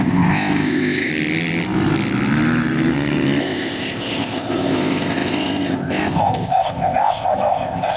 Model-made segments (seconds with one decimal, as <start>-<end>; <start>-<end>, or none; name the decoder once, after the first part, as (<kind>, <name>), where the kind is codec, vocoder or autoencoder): 0.0-1.1 (codec, ZipCodec); 3.4-8.0